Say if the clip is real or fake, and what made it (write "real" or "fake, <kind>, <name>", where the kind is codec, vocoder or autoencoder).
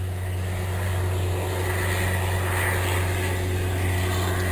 real